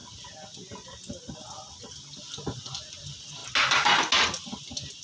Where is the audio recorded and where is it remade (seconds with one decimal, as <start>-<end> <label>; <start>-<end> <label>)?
0.0-5.0 recorded